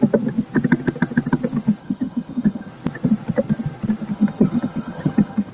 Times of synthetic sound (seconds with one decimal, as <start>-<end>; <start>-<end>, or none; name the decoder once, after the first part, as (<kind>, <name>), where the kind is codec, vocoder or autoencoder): 1.8-2.7 (vocoder, HiFi-GAN); 4.1-5.5